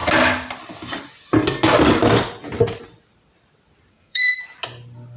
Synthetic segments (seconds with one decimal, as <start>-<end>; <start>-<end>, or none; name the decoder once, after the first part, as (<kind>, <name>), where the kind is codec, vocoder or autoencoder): 3.9-4.4 (codec, SNAC)